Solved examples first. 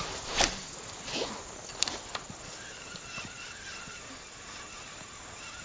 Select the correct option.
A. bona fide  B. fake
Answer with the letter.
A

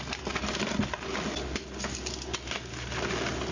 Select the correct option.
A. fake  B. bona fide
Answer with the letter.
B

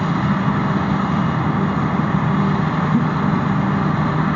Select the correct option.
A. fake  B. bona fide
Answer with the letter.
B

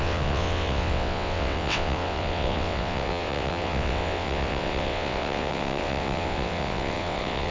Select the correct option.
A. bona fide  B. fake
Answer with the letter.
B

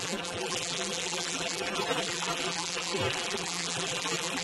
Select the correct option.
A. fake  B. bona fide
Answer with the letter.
A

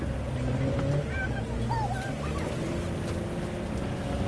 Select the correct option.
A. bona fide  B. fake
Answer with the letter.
A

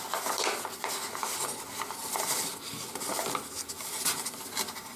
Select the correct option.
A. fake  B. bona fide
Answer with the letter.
B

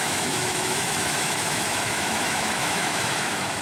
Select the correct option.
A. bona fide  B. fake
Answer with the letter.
B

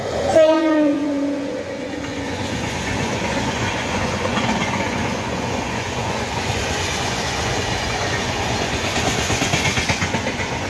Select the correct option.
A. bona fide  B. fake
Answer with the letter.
B